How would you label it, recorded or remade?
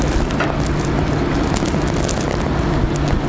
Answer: recorded